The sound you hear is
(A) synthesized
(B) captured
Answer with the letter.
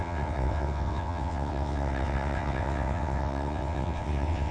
A